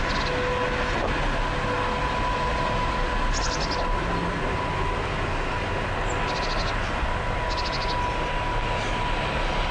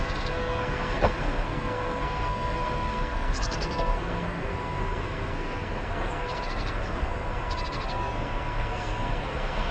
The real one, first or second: first